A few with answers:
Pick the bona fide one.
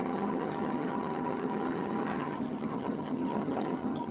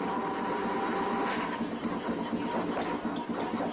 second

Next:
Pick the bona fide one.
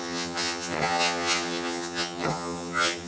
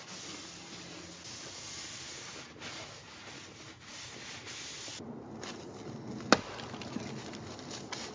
second